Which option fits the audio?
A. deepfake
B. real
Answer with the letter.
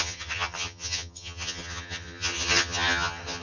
A